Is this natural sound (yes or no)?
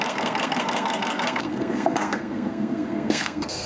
no